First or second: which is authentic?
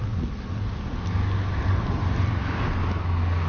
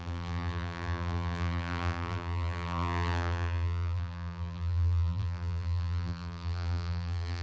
first